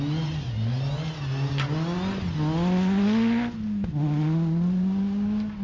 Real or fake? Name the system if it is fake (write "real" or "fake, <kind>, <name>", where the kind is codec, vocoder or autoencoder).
real